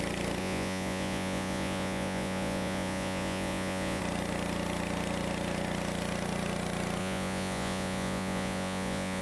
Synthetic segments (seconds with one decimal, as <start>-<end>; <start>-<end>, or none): 0.4-4.0; 7.0-9.2